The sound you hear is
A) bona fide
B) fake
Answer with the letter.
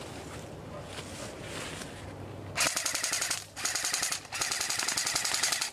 A